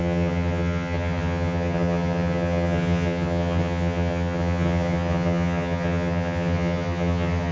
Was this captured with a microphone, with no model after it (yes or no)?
no